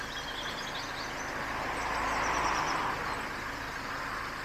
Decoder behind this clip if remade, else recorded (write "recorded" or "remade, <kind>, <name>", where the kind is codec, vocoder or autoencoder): recorded